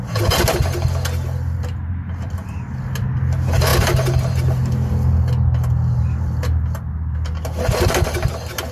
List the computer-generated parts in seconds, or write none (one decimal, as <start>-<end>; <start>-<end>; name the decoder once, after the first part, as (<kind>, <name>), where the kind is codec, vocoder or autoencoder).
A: none